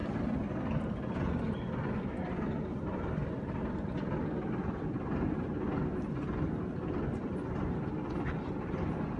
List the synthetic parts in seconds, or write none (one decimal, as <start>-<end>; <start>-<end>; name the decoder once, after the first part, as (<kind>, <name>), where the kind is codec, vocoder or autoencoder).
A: none